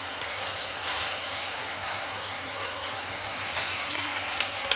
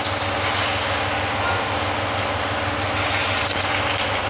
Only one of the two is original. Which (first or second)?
second